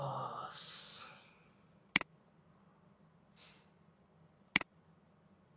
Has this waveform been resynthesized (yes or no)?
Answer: no